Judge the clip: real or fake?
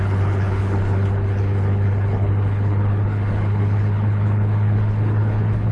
fake